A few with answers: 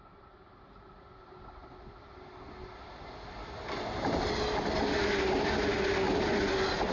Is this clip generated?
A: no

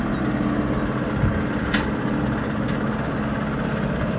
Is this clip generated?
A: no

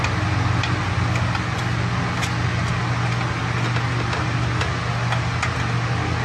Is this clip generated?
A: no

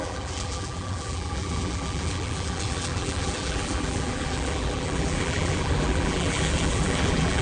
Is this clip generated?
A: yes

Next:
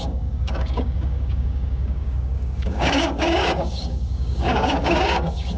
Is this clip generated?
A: yes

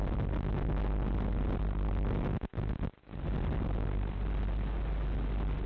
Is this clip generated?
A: no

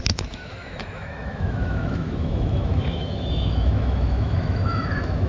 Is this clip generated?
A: yes